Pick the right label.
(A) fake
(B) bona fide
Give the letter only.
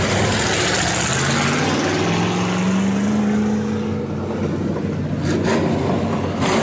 B